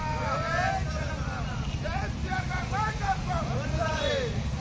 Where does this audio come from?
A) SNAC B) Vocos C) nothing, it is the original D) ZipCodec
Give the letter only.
C